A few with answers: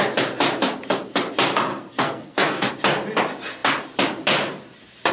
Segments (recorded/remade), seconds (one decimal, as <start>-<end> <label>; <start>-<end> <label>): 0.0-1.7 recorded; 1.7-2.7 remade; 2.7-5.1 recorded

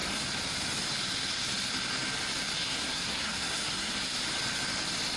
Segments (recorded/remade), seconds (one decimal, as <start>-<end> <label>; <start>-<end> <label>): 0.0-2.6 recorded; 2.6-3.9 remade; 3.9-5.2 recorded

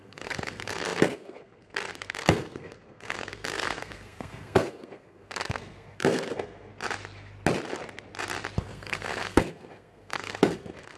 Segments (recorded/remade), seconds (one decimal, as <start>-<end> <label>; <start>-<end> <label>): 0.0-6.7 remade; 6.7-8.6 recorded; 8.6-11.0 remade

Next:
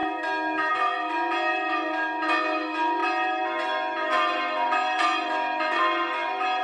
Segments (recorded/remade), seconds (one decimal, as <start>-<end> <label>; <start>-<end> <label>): 0.0-6.6 recorded